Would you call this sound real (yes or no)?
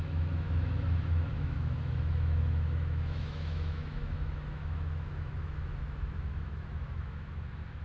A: no